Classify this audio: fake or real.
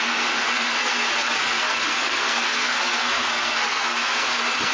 fake